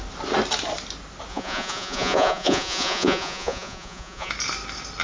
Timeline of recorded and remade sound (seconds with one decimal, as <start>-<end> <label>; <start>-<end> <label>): 0.0-1.3 recorded; 1.3-4.3 remade; 4.3-5.0 recorded